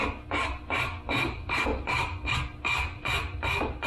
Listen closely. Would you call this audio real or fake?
real